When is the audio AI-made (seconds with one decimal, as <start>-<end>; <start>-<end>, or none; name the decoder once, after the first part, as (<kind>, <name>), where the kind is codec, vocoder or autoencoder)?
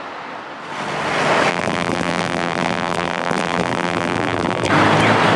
1.5-4.7 (vocoder, BigVGAN v2)